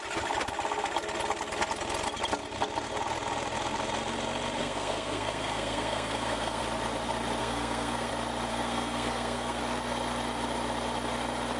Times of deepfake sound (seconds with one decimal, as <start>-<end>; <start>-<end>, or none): 4.6-6.6; 7.4-8.1; 8.5-9.6